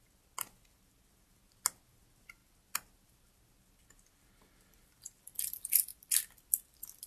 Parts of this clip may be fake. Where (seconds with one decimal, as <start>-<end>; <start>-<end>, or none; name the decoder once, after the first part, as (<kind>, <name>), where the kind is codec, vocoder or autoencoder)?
none